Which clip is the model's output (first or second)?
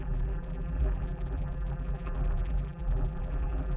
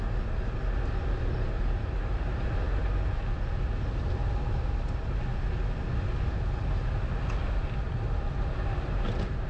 first